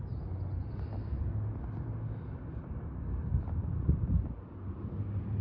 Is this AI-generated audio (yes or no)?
no